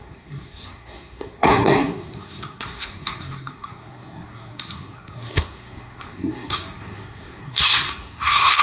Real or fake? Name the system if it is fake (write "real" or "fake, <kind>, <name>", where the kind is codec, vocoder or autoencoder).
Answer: fake, codec, SNAC